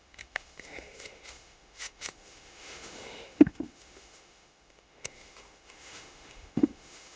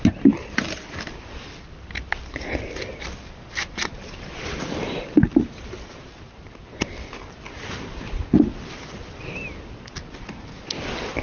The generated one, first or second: first